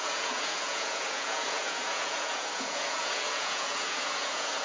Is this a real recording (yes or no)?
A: no